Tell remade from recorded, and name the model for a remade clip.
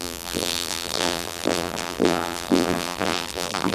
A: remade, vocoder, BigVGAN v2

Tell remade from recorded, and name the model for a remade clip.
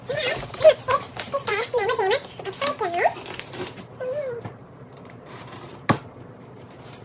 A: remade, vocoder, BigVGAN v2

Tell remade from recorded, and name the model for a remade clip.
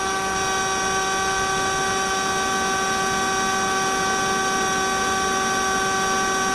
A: recorded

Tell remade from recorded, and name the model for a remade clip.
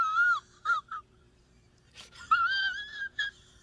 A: remade, vocoder, BigVGAN v2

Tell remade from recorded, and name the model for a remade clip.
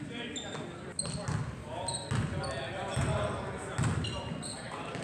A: recorded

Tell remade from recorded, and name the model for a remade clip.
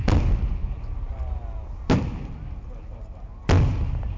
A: recorded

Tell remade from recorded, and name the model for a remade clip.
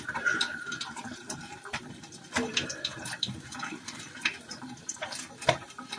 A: remade, vocoder, BigVGAN v2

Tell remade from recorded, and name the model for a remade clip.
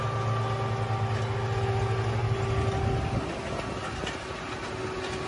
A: recorded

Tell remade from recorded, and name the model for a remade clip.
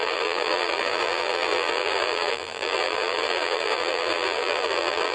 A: remade, vocoder, BigVGAN v2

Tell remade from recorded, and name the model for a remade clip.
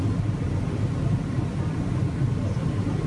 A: recorded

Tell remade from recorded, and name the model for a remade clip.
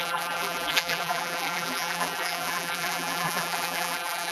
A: remade, vocoder, BigVGAN v2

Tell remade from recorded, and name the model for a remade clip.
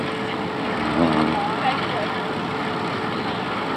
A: recorded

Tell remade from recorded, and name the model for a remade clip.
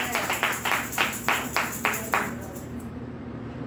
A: remade, vocoder, BigVGAN v2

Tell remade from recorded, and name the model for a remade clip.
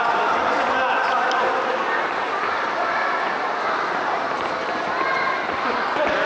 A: recorded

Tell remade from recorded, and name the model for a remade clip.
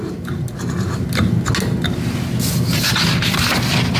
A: recorded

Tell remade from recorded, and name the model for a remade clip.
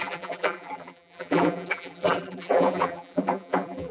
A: remade, vocoder, BigVGAN v2